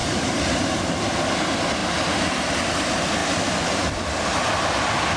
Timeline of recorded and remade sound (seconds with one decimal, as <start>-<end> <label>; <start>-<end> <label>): 0.0-0.8 remade; 0.8-1.8 recorded; 1.8-2.6 remade; 2.6-5.2 recorded